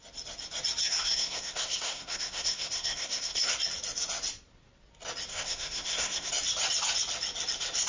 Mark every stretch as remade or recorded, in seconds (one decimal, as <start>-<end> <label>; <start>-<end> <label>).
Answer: 0.0-0.8 recorded; 0.8-3.5 remade; 3.5-5.3 recorded; 5.3-6.3 remade; 6.3-7.9 recorded

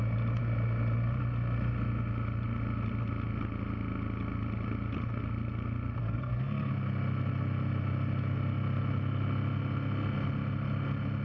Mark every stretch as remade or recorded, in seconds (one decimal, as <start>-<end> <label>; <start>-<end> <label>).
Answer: 0.0-6.0 recorded; 6.0-6.7 remade; 6.7-11.2 recorded

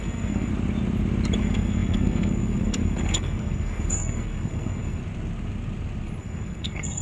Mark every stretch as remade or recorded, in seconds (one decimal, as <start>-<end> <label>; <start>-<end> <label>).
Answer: 0.0-0.5 remade; 0.5-1.4 recorded; 1.4-5.0 remade; 5.0-6.2 recorded; 6.2-7.0 remade

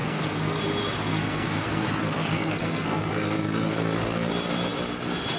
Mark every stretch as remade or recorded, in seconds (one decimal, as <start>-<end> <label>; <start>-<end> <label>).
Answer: 0.0-0.6 remade; 0.6-1.1 recorded; 1.1-4.3 remade; 4.3-5.4 recorded

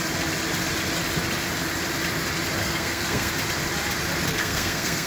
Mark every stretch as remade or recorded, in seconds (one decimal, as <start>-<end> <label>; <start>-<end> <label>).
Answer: 0.0-2.6 recorded; 2.6-3.3 remade; 3.3-4.3 recorded; 4.3-5.1 remade